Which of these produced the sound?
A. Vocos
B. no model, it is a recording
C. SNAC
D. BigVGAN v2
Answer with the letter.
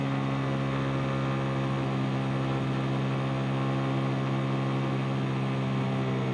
B